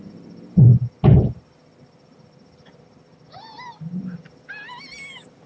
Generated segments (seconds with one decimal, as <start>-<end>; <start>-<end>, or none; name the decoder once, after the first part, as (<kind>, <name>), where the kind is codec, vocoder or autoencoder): none